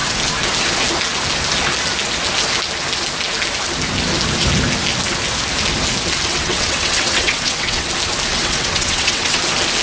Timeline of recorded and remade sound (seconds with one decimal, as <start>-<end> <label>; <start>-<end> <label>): 0.0-6.3 recorded; 6.3-7.9 remade; 7.9-8.3 recorded; 8.3-9.4 remade; 9.4-9.8 recorded